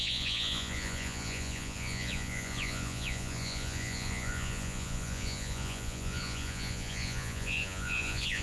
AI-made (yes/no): yes